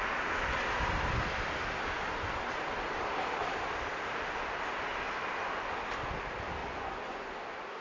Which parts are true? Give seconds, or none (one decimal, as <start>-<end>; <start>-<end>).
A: 0.0-6.6; 7.3-7.8